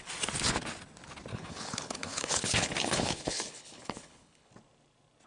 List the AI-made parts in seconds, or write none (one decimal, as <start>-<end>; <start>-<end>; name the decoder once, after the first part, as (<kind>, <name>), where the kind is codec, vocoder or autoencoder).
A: 1.3-4.5 (codec, HILCodec)